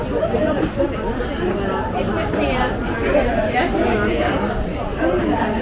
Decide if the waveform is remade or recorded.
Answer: recorded